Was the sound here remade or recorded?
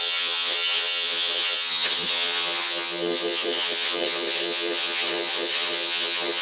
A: remade